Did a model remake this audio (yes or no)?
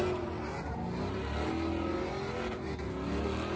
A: no